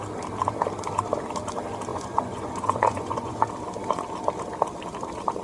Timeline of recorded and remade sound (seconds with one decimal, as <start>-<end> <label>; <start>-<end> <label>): 0.0-1.9 recorded; 1.9-3.5 remade; 3.5-5.4 recorded